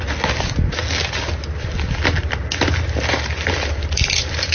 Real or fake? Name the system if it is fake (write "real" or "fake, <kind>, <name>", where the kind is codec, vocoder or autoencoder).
real